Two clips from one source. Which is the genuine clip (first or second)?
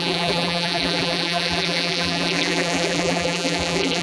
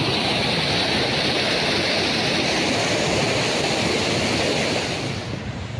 second